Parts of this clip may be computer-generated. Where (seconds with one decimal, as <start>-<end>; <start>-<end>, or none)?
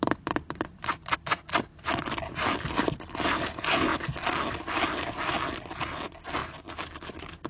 0.0-3.9; 4.6-6.4; 6.9-7.5